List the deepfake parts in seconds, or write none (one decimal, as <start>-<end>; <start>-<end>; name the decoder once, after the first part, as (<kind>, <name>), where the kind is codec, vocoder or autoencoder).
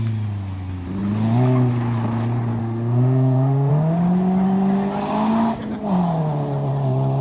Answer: 2.6-3.7 (autoencoder, DAC-VAE)